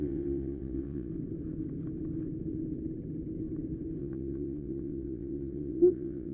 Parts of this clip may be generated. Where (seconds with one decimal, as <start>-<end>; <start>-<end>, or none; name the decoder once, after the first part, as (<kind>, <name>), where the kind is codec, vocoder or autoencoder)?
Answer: 0.0-1.1 (vocoder, WaveNeXt); 4.0-6.3